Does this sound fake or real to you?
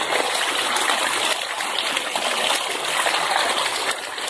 real